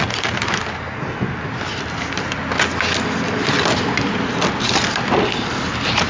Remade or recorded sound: recorded